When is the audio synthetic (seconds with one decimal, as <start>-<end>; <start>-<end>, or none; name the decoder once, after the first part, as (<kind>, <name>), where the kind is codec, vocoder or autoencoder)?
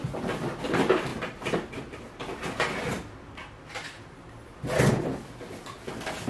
none